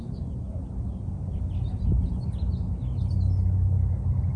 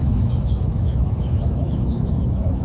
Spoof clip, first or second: second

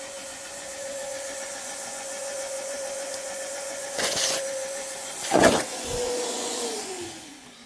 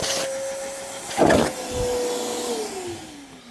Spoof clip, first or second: first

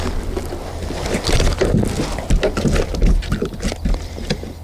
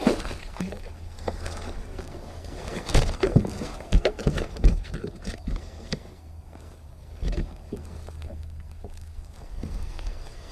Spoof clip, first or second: second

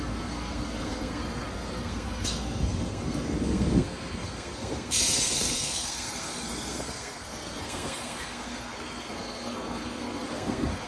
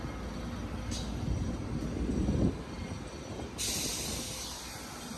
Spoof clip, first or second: first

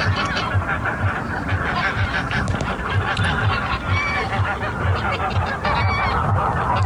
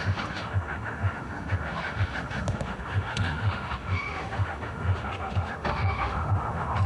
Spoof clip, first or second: second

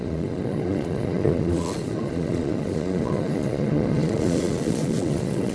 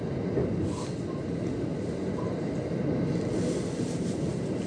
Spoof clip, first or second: first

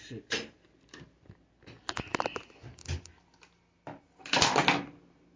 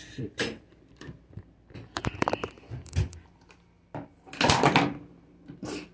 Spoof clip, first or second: second